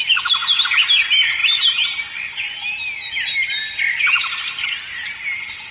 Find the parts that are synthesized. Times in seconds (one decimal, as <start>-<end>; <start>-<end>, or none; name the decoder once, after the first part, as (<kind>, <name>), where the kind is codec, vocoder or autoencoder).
1.4-2.0 (vocoder, BigVGAN v2)

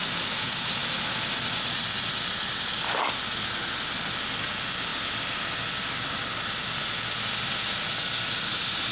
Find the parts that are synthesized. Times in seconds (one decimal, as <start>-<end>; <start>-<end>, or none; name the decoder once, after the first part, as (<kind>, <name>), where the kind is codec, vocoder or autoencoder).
none